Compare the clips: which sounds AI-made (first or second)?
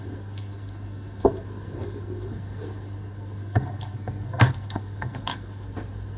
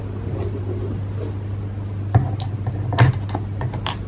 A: first